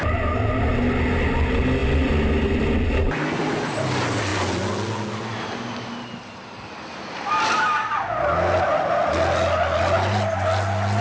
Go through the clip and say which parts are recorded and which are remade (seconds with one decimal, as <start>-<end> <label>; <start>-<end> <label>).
0.0-11.0 recorded